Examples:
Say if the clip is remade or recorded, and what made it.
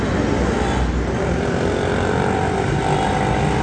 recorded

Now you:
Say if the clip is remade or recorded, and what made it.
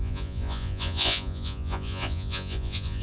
remade, vocoder, Vocos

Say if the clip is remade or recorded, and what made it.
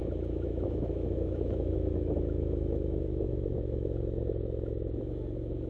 remade, autoencoder, DAC-VAE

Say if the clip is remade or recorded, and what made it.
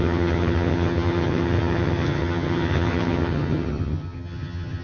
remade, vocoder, HiFi-GAN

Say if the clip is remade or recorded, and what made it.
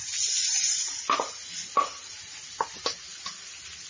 recorded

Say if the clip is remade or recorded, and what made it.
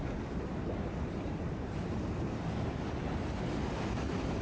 remade, vocoder, BigVGAN v2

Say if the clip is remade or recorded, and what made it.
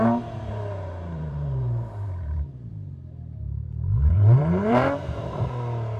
remade, vocoder, BigVGAN v2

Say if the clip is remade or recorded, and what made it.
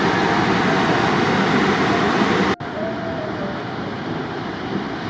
recorded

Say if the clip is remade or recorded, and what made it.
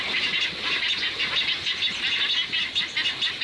recorded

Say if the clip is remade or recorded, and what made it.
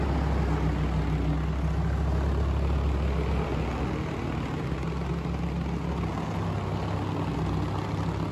recorded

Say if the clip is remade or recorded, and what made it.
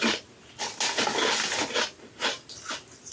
recorded